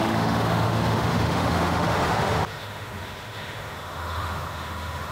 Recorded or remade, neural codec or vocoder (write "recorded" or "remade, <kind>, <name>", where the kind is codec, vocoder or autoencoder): remade, autoencoder, DAC-VAE